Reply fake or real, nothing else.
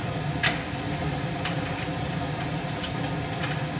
real